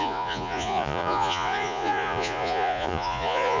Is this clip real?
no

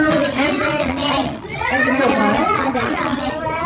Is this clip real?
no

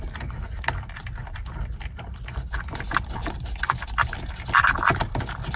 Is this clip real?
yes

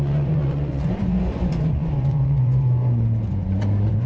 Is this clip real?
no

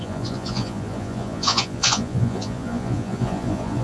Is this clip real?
no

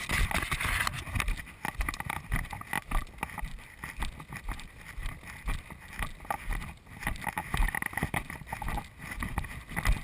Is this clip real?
yes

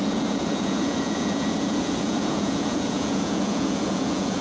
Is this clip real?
no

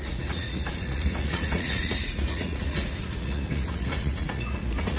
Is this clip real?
no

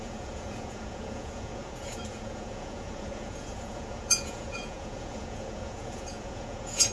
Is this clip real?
no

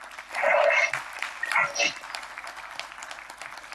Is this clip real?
yes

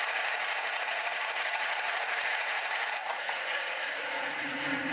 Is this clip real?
no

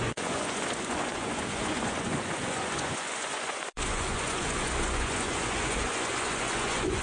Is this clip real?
no